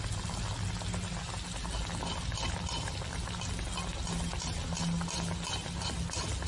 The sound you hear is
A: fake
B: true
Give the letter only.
B